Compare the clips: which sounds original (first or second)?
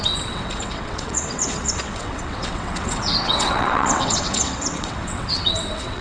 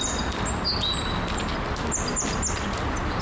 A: second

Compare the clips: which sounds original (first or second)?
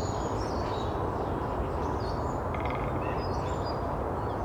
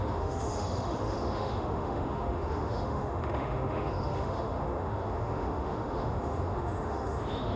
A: first